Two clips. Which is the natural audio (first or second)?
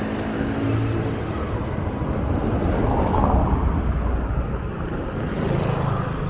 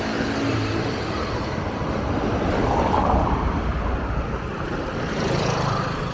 first